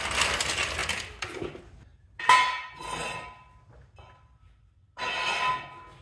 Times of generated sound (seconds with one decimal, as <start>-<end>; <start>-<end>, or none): none